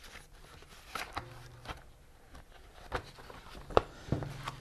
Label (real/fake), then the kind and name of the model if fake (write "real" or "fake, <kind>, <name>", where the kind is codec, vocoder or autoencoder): real